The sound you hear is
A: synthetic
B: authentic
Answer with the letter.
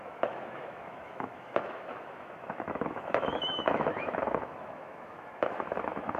A